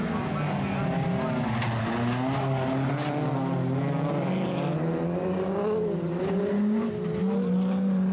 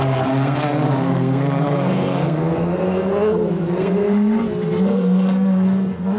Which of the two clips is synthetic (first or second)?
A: second